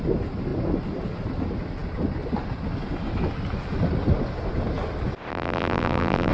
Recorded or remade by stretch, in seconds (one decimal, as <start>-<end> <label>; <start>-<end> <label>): 0.0-5.3 recorded; 5.3-6.3 remade